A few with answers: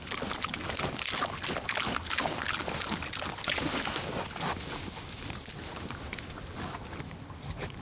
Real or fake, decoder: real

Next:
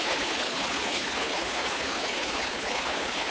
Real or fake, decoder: fake, codec, HILCodec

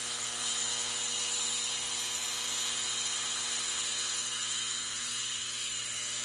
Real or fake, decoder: fake, codec, HILCodec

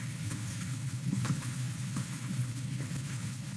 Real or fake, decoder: fake, codec, HILCodec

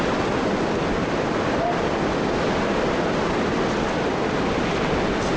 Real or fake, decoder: real